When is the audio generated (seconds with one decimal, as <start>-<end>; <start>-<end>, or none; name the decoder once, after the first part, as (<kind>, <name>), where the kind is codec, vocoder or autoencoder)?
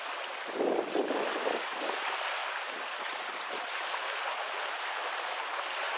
2.4-6.0 (vocoder, BigVGAN v2)